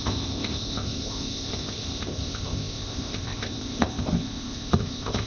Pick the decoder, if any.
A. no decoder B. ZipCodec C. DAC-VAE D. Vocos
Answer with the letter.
B